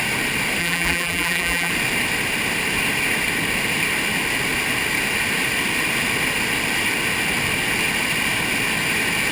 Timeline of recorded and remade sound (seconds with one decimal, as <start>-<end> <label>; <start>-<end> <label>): 0.0-0.6 recorded; 0.6-1.7 remade; 1.7-9.3 recorded